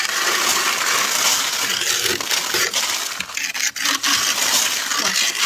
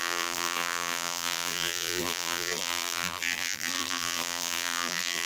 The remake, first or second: second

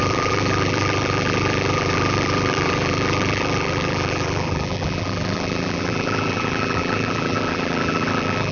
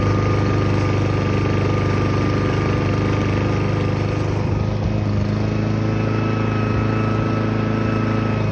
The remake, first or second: first